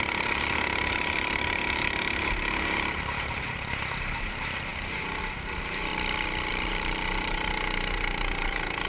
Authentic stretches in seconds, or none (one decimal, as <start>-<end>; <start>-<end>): 5.9-6.5